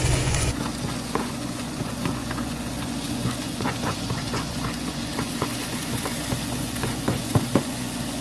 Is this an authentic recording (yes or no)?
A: no